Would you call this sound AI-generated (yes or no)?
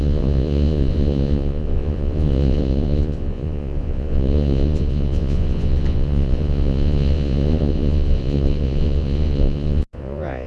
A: yes